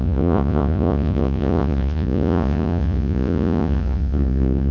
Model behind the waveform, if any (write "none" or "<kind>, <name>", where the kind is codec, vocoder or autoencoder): vocoder, Vocos